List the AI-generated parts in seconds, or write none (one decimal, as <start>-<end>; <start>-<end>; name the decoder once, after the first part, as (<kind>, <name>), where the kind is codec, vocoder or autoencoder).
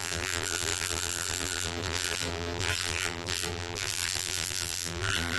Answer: 0.0-5.4 (vocoder, BigVGAN v2)